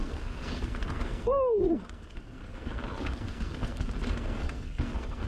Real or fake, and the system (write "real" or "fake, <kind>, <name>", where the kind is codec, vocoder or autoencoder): fake, codec, SNAC